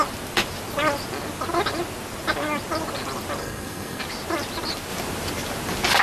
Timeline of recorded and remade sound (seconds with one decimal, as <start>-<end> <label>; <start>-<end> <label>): 0.0-3.4 recorded; 3.4-4.0 remade; 4.0-6.0 recorded